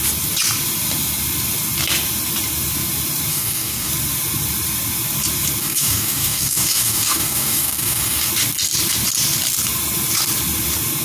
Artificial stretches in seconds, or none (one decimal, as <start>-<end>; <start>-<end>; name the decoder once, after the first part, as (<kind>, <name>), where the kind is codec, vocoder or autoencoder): 3.3-3.9 (codec, DAC); 5.6-8.3